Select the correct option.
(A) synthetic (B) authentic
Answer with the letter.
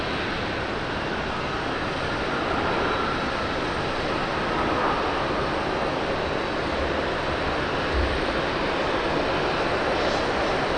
B